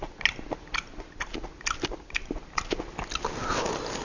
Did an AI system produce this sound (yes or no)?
no